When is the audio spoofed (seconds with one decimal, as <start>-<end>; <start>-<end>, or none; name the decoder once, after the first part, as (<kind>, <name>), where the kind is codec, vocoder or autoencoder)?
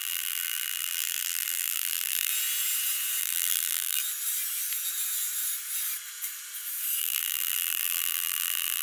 0.0-2.3 (vocoder, BigVGAN v2); 3.2-4.0; 7.0-8.8